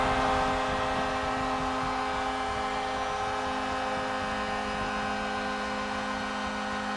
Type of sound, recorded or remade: recorded